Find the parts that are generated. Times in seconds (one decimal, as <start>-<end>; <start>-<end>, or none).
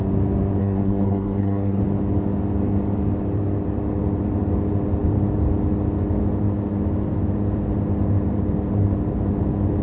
0.6-1.8